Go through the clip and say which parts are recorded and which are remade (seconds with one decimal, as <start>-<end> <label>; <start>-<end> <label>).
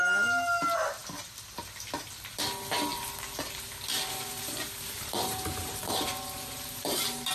0.0-2.9 recorded; 2.9-7.3 remade